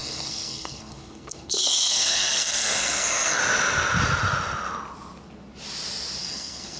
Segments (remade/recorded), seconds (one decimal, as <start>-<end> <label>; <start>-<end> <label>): 0.0-3.4 remade; 3.4-6.2 recorded; 6.2-6.8 remade